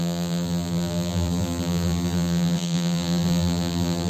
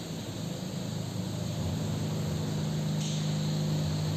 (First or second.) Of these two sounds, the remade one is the first